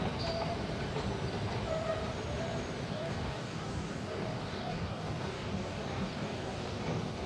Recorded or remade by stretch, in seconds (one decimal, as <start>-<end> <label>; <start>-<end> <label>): 0.0-2.9 recorded; 2.9-7.3 remade

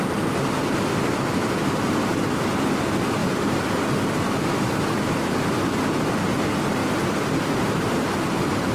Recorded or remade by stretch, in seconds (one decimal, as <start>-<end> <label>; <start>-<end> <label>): 0.0-3.2 recorded; 3.2-5.5 remade; 5.5-6.8 recorded; 6.8-8.7 remade

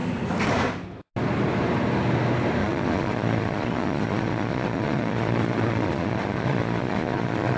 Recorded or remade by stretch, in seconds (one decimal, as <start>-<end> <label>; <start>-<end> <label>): 0.0-2.6 recorded; 2.6-7.6 remade

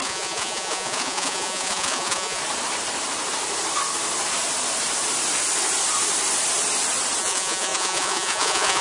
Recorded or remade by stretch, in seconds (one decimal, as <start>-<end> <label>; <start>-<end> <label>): 0.0-2.4 remade; 2.4-7.2 recorded; 7.2-8.8 remade